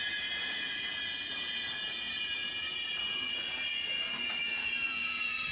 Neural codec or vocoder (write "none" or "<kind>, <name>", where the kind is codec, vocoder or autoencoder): vocoder, Vocos